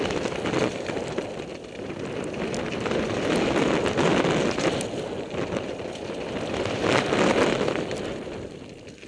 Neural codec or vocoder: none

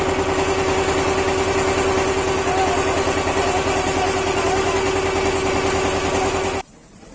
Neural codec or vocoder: none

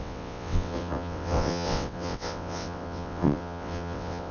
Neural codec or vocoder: vocoder, WaveNeXt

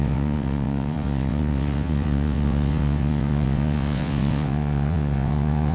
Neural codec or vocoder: vocoder, WaveNeXt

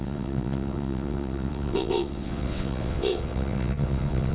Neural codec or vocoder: vocoder, WaveNeXt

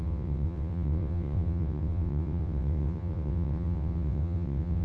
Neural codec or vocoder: vocoder, WaveNeXt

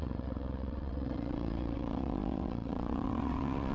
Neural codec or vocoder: vocoder, WaveNeXt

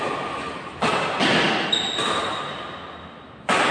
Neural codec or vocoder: none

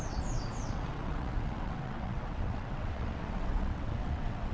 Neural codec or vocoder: vocoder, WaveNeXt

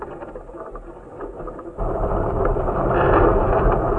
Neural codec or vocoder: none